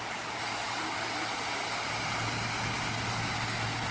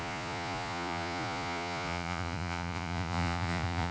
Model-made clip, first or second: second